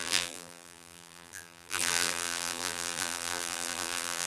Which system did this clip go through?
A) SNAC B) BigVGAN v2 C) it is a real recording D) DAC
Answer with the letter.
B